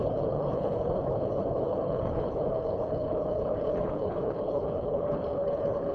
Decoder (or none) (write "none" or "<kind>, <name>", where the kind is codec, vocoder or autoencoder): codec, HILCodec